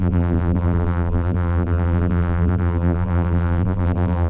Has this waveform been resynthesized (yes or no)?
yes